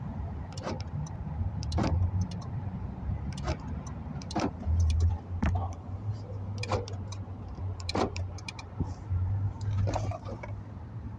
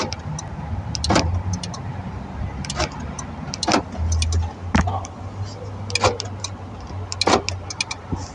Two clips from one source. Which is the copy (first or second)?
first